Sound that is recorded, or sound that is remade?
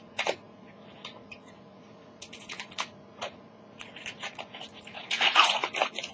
remade